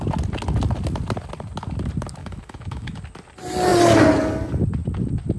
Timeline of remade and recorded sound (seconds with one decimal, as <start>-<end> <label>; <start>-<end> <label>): 0.0-2.2 recorded; 2.2-3.0 remade; 3.0-5.4 recorded